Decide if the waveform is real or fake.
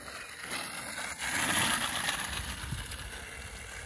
real